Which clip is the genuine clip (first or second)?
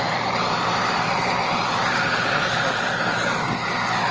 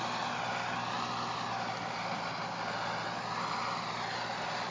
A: second